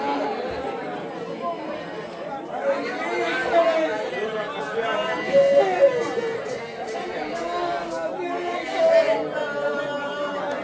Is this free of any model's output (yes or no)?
yes